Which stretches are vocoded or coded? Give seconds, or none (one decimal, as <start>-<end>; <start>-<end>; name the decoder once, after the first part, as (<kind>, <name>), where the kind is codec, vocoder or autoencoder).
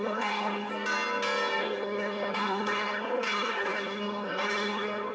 0.0-0.7 (codec, SNAC); 1.6-5.1